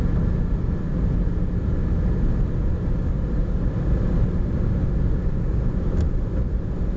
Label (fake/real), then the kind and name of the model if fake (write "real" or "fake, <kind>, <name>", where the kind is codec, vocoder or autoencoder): real